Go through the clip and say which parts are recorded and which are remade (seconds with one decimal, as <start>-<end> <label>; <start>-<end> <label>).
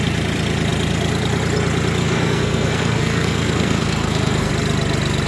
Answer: 0.0-2.0 recorded; 2.0-4.5 remade; 4.5-5.3 recorded